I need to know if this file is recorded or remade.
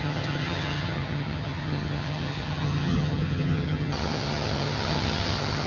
remade